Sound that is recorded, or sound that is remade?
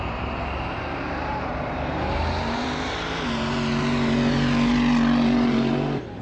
remade